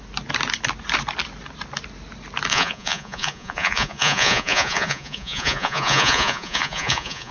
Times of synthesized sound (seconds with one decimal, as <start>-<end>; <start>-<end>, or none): 2.5-7.3